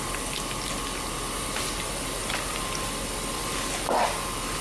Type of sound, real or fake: real